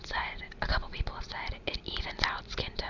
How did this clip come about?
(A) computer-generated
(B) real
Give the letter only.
B